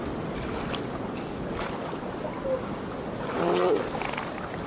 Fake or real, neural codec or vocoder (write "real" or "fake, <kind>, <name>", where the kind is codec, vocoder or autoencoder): real